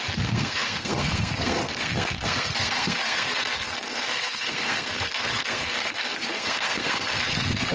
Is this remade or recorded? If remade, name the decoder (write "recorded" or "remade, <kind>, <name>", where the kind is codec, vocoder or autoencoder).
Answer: remade, codec, SNAC